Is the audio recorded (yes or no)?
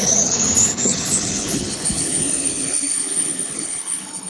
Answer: no